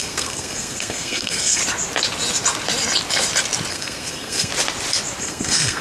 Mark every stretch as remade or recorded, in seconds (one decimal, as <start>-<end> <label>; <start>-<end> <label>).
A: 0.0-1.6 remade; 1.6-3.7 recorded; 3.7-4.5 remade; 4.5-5.2 recorded; 5.2-5.8 remade